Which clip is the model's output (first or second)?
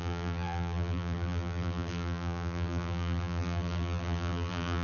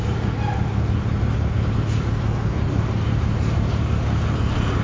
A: first